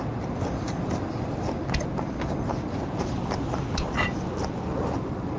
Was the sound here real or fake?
real